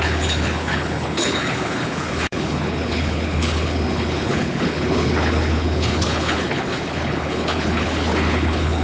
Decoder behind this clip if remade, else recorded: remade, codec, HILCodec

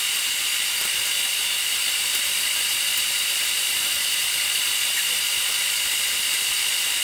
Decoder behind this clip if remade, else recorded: recorded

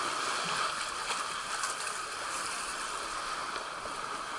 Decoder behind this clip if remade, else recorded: recorded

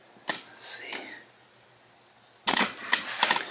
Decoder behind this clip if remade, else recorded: recorded